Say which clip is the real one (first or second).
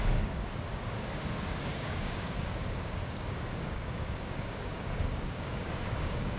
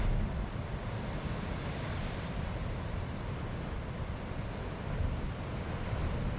second